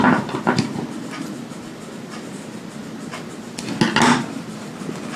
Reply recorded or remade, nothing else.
recorded